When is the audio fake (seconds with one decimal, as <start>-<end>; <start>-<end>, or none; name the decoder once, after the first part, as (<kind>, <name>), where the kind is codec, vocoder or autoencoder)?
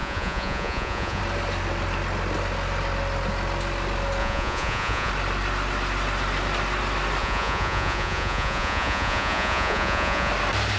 0.0-1.2 (vocoder, Vocos); 4.2-5.1; 7.2-10.3